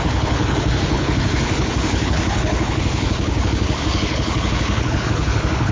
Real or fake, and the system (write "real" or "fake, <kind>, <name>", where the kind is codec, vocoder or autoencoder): fake, codec, HILCodec